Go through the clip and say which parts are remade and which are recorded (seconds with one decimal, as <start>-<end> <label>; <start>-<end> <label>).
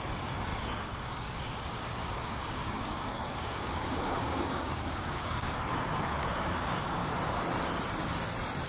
0.0-7.0 remade; 7.0-8.7 recorded